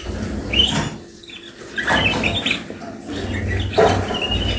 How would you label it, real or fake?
real